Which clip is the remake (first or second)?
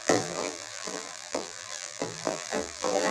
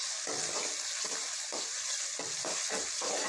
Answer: first